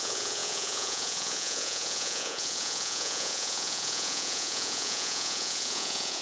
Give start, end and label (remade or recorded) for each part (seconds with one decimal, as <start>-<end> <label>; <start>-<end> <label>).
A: 0.0-6.2 remade